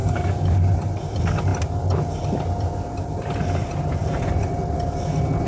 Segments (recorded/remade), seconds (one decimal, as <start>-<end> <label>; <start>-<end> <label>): 0.0-0.9 remade; 0.9-3.6 recorded; 3.6-4.5 remade; 4.5-5.5 recorded